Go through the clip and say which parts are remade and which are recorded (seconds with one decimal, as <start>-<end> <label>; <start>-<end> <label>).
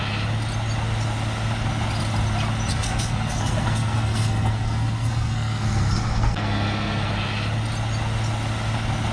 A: 0.0-2.7 recorded; 2.7-7.1 remade; 7.1-9.1 recorded